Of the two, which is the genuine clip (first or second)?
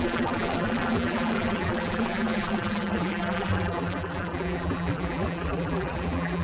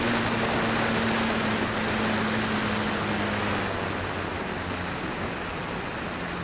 second